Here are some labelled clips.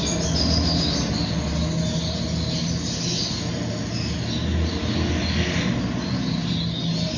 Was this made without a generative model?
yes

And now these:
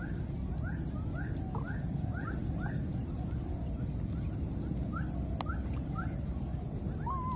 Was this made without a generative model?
yes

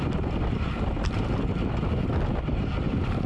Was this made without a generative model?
yes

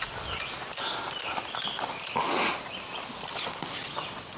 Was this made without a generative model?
yes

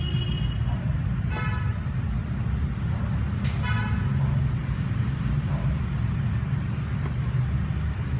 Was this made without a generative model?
yes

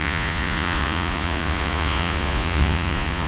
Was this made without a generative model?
no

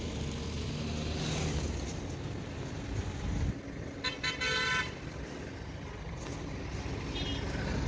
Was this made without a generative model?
yes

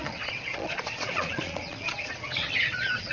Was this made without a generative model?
no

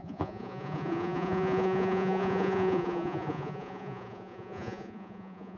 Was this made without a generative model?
no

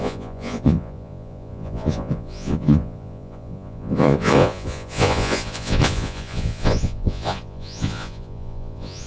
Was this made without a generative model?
no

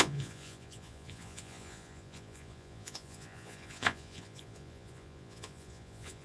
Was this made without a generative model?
no